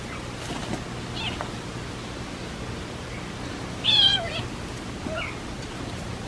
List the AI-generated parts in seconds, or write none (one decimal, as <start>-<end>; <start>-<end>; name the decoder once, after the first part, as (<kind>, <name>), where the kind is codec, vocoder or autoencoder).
none